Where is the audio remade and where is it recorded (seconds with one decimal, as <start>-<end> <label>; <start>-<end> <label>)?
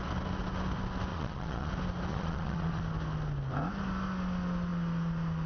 0.0-1.1 recorded; 1.1-1.7 remade; 1.7-2.1 recorded; 2.1-2.8 remade; 2.8-5.5 recorded